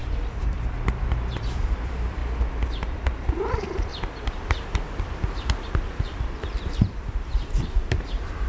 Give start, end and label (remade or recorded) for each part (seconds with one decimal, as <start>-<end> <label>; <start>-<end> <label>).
0.0-2.2 remade; 2.2-2.7 recorded; 2.7-3.9 remade; 3.9-6.2 recorded; 6.2-8.5 remade

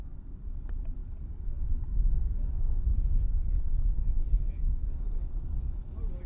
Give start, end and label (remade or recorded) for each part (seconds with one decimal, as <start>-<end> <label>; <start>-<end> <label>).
0.0-6.3 recorded

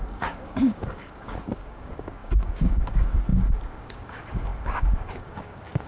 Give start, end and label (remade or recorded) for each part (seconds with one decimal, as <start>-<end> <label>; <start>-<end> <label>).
0.0-5.9 remade

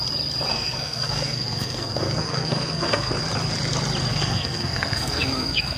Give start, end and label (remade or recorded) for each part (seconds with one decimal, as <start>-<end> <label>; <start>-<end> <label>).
0.0-0.5 recorded; 0.5-3.1 remade; 3.1-4.1 recorded; 4.1-5.8 remade

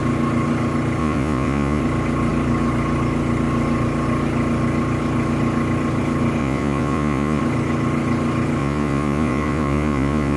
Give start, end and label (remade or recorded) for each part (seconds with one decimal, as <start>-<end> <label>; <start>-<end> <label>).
0.0-1.0 recorded; 1.0-1.8 remade; 1.8-6.4 recorded; 6.4-7.4 remade; 7.4-8.6 recorded; 8.6-10.4 remade